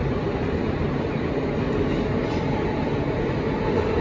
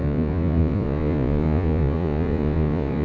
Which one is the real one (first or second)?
first